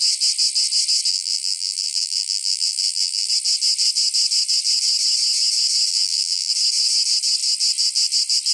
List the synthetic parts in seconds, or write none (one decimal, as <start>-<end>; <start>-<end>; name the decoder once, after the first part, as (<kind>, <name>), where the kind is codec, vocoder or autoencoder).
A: 1.1-3.3 (vocoder, BigVGAN v2); 5.9-6.5